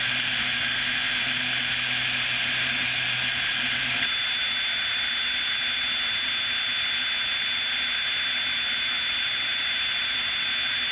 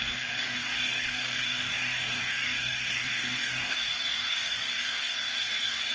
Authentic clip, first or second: first